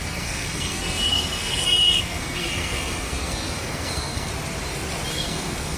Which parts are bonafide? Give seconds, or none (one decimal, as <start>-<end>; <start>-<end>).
4.3-5.1